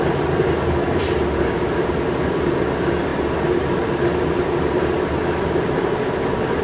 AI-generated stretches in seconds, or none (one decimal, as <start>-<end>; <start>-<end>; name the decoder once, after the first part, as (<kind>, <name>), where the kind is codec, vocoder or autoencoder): none